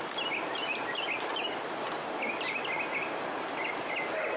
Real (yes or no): yes